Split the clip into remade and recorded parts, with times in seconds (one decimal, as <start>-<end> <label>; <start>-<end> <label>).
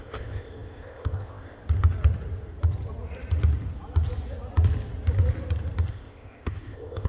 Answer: 0.0-1.6 remade; 1.6-5.9 recorded; 5.9-7.1 remade